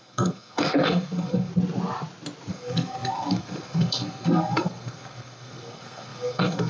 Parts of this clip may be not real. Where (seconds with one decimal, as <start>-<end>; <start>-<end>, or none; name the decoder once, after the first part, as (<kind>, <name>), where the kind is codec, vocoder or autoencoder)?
0.0-1.5 (codec, SNAC); 2.5-6.7